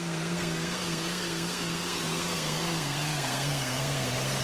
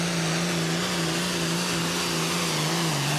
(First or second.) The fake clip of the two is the first